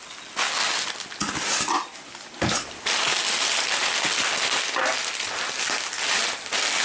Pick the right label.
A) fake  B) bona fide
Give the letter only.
B